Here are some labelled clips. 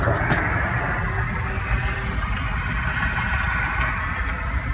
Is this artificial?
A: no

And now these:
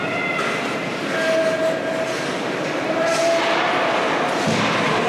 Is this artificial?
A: no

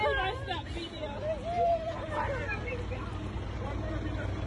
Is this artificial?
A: no